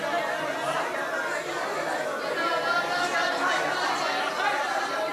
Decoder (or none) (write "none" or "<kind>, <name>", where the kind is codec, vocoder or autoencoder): none